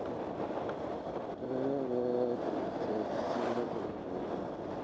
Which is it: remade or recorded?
recorded